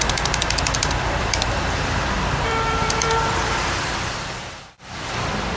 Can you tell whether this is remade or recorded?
remade